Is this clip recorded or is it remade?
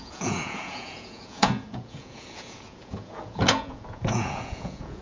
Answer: remade